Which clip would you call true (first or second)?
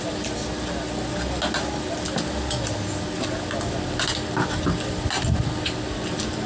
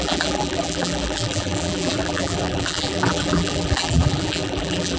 first